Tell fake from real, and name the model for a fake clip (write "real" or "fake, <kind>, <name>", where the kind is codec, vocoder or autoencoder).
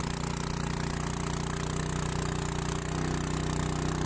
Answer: real